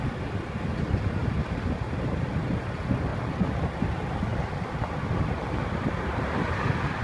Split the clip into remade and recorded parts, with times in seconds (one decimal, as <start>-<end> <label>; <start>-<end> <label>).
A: 0.0-7.0 recorded